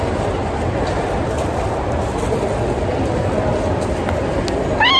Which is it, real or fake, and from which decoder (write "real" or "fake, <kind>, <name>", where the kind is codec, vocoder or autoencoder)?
real